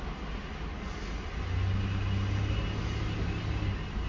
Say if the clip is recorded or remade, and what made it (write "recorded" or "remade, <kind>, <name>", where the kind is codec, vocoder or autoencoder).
recorded